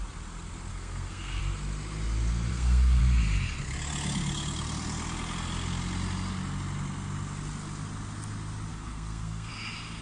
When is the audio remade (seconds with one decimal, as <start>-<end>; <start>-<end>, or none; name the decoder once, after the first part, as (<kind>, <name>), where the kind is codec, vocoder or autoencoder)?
0.7-1.4 (codec, SNAC); 2.5-3.0; 8.7-9.5